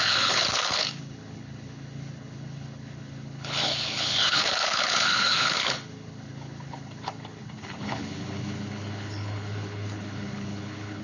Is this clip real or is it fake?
fake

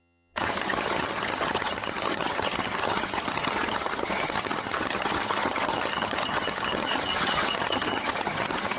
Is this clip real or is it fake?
fake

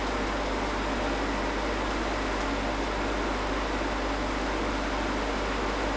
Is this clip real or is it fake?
real